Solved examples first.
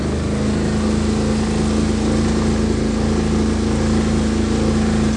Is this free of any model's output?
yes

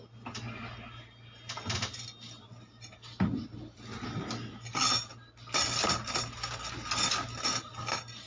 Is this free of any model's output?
yes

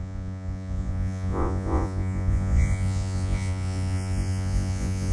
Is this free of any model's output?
no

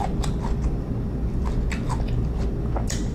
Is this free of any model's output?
yes